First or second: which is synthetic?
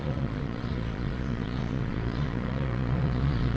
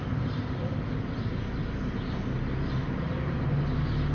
first